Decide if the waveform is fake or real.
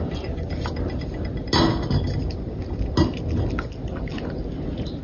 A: real